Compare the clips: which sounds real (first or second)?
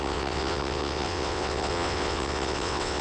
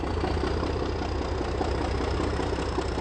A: second